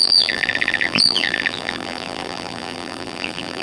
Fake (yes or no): yes